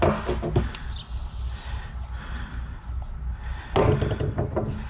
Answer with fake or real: real